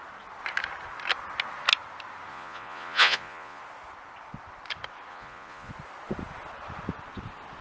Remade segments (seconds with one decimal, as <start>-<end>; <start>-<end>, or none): 2.3-3.6; 5.1-5.7